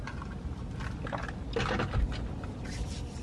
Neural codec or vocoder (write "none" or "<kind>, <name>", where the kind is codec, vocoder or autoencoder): none